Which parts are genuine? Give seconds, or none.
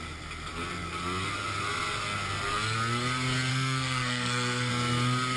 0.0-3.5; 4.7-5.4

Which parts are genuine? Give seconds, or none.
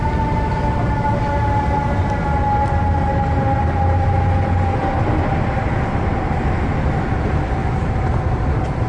0.0-8.9